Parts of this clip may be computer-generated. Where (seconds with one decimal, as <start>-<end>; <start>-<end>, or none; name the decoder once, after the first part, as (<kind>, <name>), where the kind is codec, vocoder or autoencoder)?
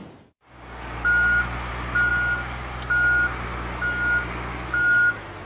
none